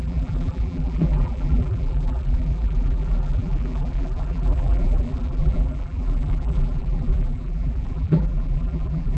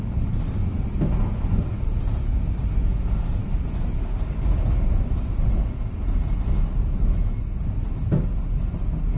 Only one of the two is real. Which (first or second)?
second